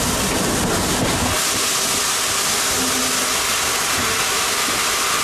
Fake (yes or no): no